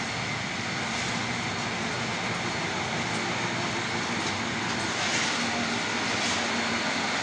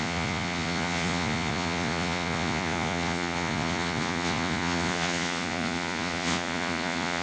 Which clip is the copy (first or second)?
second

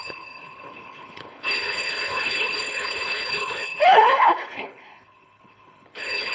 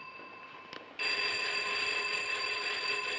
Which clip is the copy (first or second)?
first